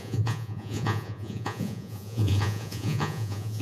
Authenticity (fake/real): fake